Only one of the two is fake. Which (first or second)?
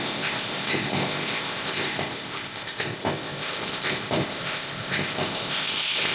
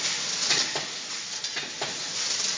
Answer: first